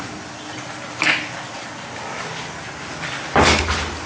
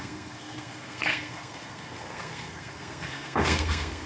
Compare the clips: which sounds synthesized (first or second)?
second